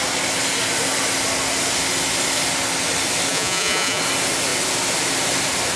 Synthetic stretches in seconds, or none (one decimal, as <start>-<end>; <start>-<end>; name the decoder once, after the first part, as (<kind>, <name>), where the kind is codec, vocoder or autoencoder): 3.3-4.0 (vocoder, Vocos)